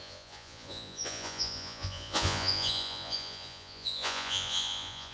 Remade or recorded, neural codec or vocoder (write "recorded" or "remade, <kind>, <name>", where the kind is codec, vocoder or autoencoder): remade, vocoder, Vocos